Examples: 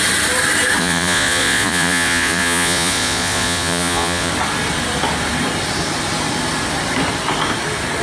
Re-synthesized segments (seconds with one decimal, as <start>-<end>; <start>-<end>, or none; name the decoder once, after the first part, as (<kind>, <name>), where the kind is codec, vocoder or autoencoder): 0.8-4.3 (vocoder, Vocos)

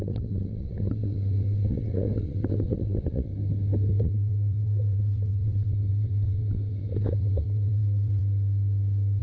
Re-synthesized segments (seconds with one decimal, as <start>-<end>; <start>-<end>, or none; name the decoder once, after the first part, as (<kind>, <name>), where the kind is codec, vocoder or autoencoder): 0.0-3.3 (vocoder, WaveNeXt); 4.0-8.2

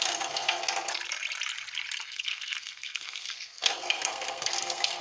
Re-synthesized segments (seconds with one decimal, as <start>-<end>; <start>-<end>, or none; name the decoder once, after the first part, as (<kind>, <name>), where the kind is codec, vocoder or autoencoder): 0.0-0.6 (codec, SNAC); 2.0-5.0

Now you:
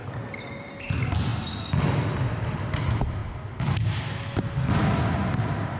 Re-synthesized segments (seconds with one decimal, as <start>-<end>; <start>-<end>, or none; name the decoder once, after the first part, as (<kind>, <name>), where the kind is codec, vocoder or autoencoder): none

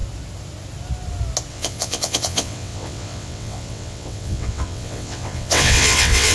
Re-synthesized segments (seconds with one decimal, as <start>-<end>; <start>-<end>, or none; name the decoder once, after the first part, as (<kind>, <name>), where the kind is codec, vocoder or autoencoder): 1.5-6.3 (vocoder, WaveNeXt)